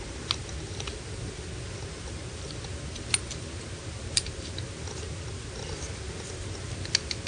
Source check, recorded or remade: recorded